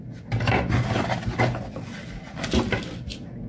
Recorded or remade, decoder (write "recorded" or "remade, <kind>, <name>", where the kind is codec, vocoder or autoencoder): recorded